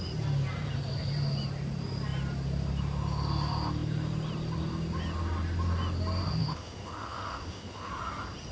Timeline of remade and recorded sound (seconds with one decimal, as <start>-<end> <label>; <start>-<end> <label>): 0.0-6.4 recorded; 6.4-7.9 remade; 7.9-8.5 recorded